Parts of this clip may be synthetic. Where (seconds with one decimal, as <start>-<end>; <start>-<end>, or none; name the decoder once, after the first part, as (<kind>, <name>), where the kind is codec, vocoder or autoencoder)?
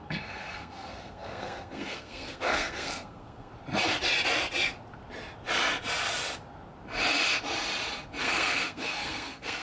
0.0-3.5 (codec, SNAC); 8.2-9.6